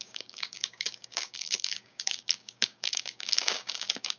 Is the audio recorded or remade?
remade